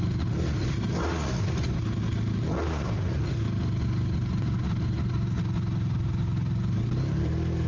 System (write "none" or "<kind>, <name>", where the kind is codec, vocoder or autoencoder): none